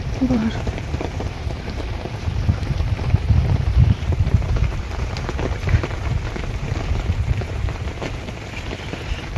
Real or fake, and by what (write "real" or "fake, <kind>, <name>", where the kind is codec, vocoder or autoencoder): fake, vocoder, BigVGAN v2